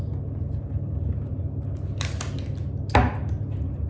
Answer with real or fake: real